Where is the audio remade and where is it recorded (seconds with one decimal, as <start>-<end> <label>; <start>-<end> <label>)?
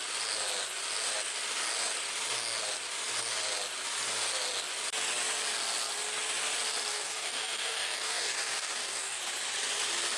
0.0-6.9 recorded; 6.9-9.2 remade; 9.2-10.2 recorded